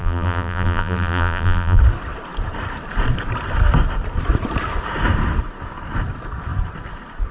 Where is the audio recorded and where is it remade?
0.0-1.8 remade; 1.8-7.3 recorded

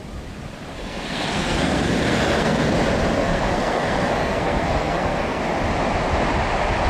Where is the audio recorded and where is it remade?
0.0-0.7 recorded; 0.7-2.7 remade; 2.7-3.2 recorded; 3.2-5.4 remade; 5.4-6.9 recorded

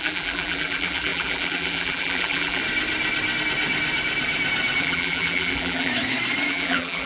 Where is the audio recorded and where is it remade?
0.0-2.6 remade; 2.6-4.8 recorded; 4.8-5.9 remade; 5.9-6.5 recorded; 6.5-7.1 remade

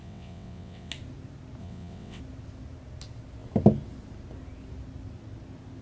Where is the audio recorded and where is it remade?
0.0-0.9 remade; 0.9-1.6 recorded; 1.6-2.2 remade; 2.2-5.8 recorded